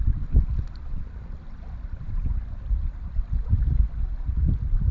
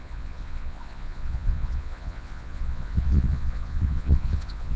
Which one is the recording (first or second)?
first